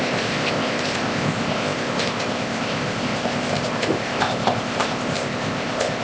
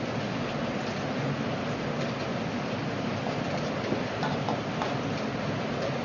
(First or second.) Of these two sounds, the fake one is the first